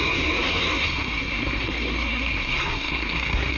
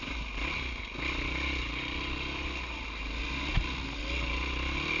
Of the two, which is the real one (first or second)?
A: second